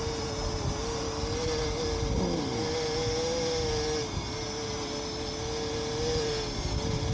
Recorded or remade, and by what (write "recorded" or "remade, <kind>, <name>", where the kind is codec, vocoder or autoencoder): recorded